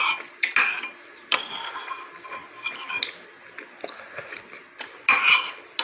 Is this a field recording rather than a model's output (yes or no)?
yes